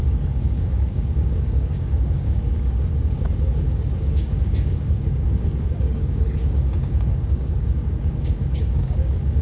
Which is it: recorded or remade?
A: remade